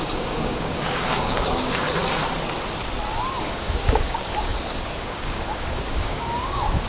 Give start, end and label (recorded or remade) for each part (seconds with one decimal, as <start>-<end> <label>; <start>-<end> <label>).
0.0-2.0 remade; 2.0-3.4 recorded; 3.4-6.9 remade